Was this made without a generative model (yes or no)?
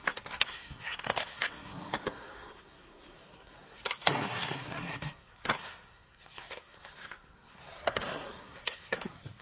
no